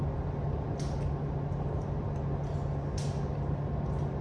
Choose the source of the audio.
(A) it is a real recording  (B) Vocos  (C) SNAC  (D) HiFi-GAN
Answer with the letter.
A